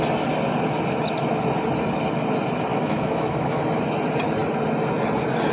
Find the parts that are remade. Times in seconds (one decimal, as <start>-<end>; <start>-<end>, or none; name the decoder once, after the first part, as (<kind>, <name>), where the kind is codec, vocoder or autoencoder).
2.7-3.6 (autoencoder, DAC-VAE)